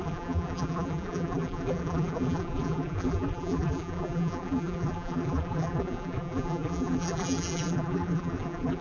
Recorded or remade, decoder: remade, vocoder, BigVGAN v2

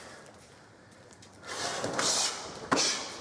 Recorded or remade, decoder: recorded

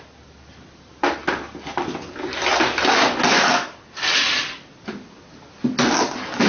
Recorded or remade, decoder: recorded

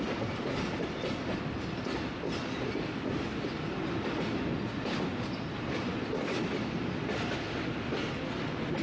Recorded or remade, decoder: recorded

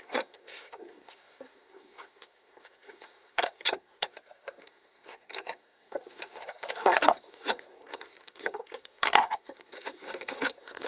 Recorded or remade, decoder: remade, codec, SNAC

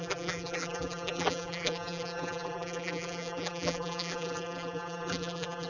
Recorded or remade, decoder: remade, vocoder, BigVGAN v2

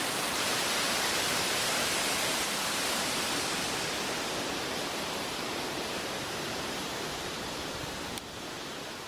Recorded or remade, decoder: remade, vocoder, BigVGAN v2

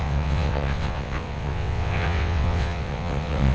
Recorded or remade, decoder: remade, vocoder, WaveNeXt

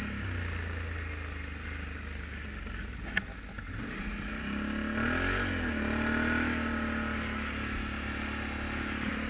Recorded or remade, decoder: recorded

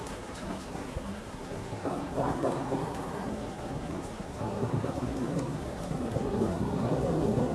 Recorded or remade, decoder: remade, codec, SNAC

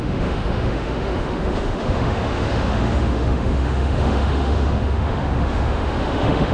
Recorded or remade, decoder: remade, autoencoder, DAC-VAE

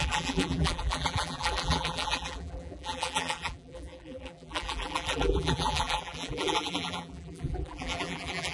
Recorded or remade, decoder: remade, vocoder, BigVGAN v2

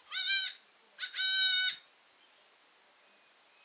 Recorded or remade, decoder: recorded